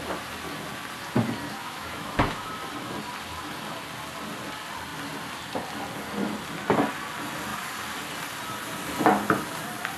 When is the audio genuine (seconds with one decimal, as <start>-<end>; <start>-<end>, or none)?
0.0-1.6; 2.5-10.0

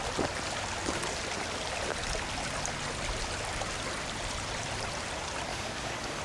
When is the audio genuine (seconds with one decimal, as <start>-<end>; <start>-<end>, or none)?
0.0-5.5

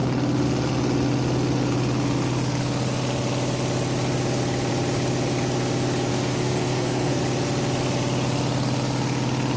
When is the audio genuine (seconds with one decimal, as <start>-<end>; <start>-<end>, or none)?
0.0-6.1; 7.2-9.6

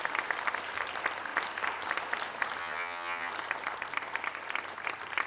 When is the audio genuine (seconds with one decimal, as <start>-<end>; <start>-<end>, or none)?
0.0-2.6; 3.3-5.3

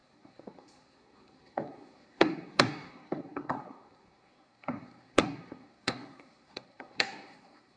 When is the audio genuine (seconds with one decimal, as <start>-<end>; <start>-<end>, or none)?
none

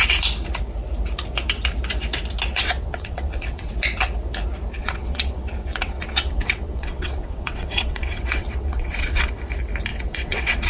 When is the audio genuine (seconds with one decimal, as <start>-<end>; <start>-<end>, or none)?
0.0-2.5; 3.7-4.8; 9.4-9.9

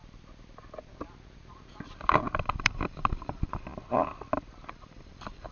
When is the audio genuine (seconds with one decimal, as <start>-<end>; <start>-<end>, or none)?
0.0-2.4; 3.7-4.7